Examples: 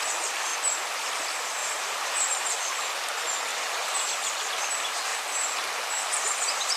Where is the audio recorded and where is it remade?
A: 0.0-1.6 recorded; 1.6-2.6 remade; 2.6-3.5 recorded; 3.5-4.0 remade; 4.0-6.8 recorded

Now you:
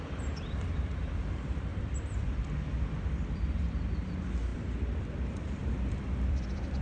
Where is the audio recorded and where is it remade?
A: 0.0-6.8 remade